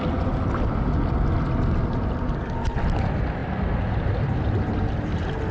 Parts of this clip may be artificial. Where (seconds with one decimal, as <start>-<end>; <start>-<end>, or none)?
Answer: 3.4-5.1